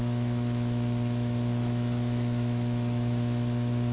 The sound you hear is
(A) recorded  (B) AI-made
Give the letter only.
B